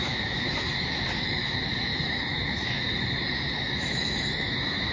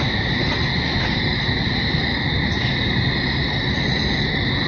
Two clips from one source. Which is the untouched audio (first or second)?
second